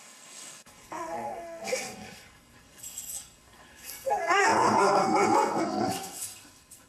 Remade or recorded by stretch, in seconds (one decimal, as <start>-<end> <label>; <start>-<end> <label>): 0.0-6.9 remade